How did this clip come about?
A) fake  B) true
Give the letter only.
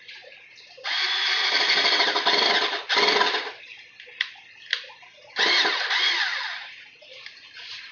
A